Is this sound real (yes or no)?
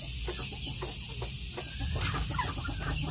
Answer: yes